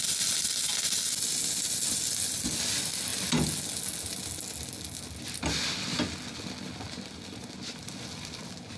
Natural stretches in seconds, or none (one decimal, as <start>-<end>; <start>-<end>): 0.0-8.8